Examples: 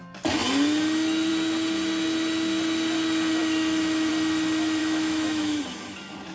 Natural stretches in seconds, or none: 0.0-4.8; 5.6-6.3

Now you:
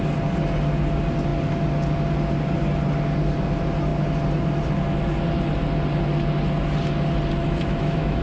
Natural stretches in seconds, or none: 0.0-7.4

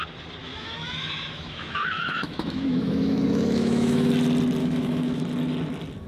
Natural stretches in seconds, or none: 0.0-0.4; 4.1-4.6; 5.2-6.1

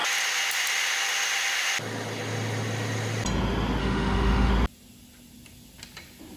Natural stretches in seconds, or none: 0.0-3.8; 4.5-6.4

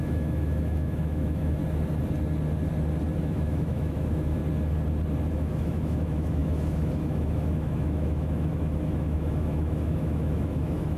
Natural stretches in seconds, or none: 1.6-3.2; 4.4-5.3

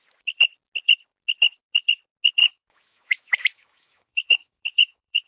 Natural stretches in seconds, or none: 0.0-2.4